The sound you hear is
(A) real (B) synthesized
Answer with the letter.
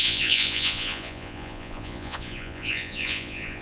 B